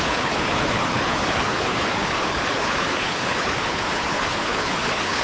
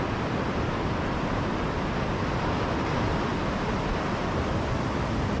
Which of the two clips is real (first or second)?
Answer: second